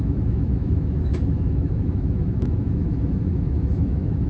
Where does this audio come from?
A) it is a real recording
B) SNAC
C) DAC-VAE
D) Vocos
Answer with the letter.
C